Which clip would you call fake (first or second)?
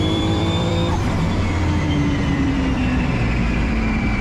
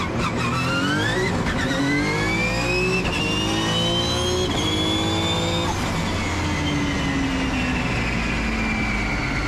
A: first